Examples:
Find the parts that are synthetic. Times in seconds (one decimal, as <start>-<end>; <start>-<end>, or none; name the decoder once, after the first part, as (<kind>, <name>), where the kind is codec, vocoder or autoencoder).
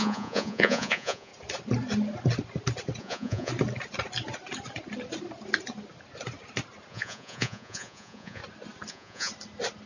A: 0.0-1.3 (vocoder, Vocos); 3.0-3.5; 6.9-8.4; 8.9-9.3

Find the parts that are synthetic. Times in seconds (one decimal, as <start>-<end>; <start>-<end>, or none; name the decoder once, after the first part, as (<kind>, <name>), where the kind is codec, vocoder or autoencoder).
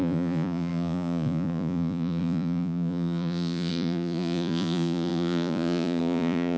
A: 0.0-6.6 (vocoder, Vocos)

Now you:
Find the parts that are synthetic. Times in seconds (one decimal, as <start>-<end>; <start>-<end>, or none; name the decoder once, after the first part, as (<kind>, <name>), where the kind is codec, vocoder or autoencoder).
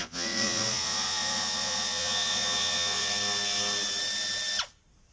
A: 0.0-3.1 (vocoder, Vocos)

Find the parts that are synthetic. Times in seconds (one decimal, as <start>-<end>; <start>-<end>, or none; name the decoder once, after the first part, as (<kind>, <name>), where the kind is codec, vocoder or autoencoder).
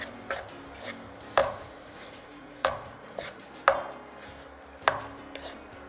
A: 1.4-3.5 (vocoder, Vocos)